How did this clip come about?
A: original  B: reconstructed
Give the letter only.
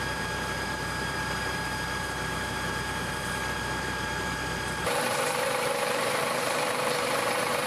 B